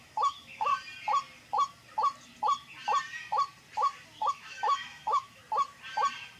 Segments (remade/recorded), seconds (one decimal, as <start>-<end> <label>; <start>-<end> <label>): 0.0-0.7 remade; 0.7-4.3 recorded; 4.3-5.4 remade; 5.4-6.4 recorded